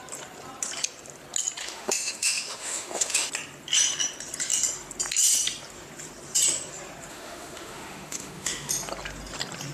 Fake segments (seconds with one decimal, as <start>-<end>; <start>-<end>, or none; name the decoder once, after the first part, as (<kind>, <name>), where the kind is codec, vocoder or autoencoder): 1.6-3.3 (autoencoder, DAC-VAE); 7.1-8.7